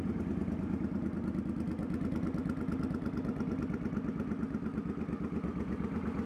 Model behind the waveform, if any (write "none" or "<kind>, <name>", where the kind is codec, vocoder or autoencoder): none